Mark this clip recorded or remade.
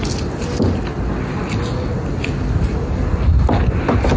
recorded